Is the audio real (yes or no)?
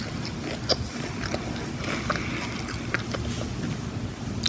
yes